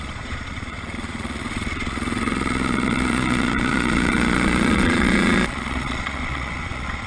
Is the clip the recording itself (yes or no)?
no